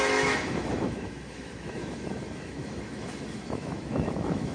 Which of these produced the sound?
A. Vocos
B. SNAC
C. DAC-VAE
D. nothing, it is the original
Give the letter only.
C